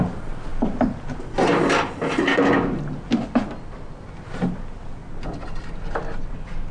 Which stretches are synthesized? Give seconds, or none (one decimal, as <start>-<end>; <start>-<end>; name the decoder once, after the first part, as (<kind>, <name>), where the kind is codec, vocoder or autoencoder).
none